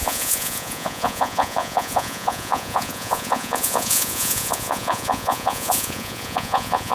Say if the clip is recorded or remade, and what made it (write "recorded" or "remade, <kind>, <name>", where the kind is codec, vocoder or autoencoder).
remade, vocoder, Vocos